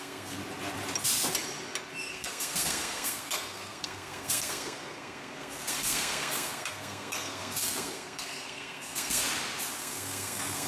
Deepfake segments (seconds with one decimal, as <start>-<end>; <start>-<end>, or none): 0.0-0.4; 2.1-9.2; 9.8-10.7